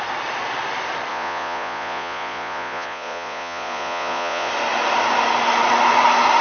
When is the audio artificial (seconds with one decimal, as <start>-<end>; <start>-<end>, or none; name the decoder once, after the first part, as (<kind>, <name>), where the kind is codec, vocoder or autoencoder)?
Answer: 1.1-4.5 (vocoder, Vocos)